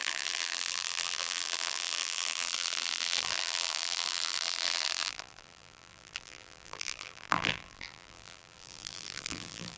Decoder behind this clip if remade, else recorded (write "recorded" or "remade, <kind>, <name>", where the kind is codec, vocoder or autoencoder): remade, vocoder, BigVGAN v2